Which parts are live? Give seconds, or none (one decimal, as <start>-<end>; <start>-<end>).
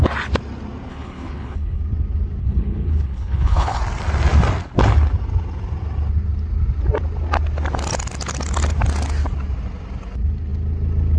0.0-0.9; 1.8-2.4; 3.8-11.2